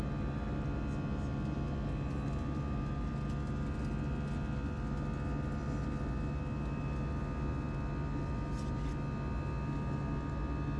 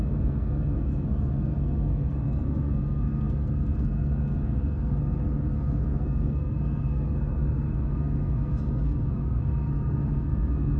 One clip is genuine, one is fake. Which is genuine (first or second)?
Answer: first